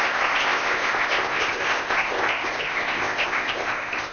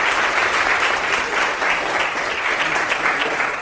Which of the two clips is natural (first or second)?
second